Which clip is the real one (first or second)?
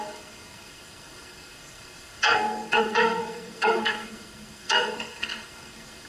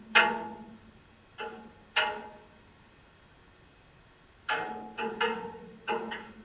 second